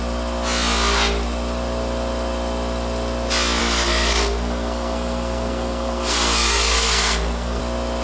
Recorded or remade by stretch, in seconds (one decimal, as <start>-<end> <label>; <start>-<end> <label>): 0.0-3.6 recorded; 3.6-7.6 remade; 7.6-8.0 recorded